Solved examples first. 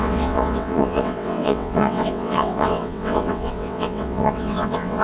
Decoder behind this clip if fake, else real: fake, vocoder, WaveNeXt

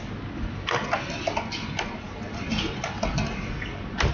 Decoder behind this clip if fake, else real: real